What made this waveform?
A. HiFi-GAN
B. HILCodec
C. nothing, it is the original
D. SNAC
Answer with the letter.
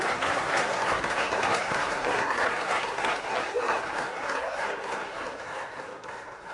D